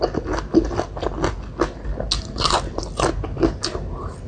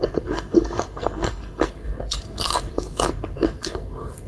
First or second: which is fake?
second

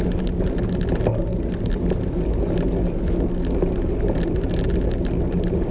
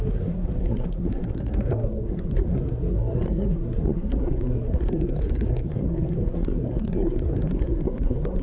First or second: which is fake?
second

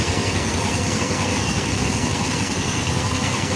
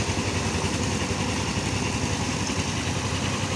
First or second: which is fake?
first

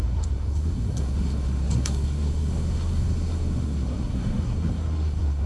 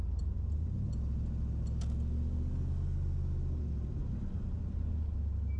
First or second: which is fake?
first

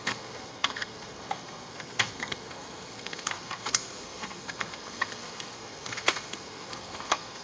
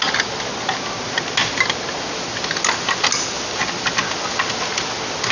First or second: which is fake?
first